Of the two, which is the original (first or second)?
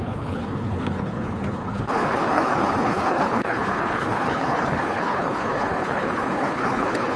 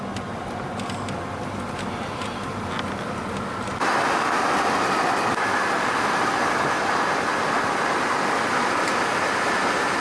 second